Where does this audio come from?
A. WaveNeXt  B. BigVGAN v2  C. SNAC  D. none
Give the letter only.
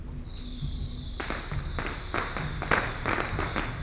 D